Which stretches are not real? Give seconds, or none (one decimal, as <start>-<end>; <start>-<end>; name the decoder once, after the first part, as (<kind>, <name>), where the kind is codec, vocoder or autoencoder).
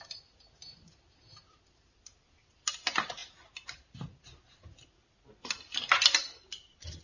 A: none